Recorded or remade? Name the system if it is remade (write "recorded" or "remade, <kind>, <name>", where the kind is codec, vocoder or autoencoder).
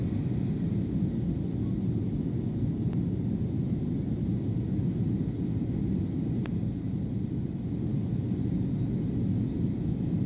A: recorded